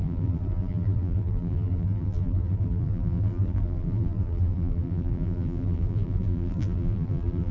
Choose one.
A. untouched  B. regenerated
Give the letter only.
B